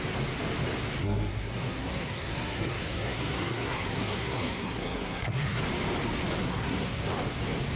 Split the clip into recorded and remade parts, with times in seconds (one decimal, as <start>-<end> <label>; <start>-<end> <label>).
0.0-1.0 recorded; 1.0-5.6 remade; 5.6-6.4 recorded; 6.4-7.1 remade; 7.1-7.8 recorded